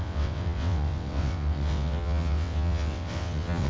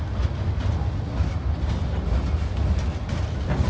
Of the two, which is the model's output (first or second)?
first